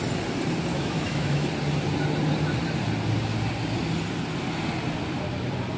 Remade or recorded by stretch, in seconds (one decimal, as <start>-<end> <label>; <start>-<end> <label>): 0.0-0.7 recorded; 0.7-1.5 remade; 1.5-5.8 recorded